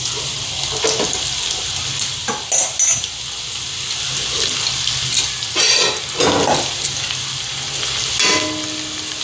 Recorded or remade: recorded